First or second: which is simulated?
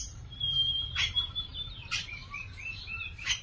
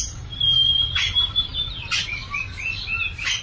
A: first